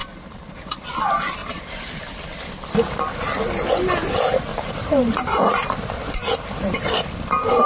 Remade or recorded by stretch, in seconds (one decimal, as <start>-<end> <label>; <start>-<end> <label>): 0.0-0.9 remade; 0.9-1.4 recorded; 1.4-2.3 remade; 2.3-4.5 recorded; 4.5-7.1 remade; 7.1-7.7 recorded